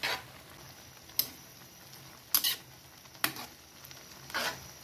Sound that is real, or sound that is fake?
real